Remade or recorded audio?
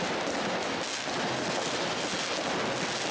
recorded